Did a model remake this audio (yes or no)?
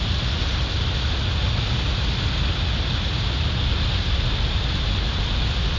no